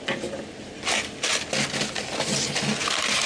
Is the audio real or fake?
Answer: real